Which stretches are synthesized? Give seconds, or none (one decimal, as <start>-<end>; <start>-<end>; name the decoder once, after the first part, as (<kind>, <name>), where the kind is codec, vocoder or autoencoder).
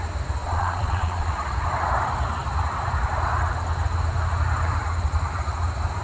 0.4-1.5 (vocoder, Vocos)